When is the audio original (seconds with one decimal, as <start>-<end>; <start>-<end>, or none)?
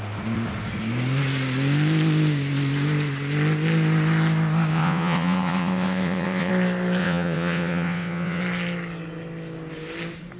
0.0-4.7; 6.5-7.0; 8.4-10.4